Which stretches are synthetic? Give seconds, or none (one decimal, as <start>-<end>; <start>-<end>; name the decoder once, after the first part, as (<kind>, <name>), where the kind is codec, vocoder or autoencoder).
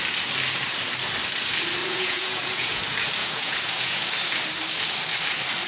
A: 1.8-2.8 (vocoder, Vocos); 3.2-4.1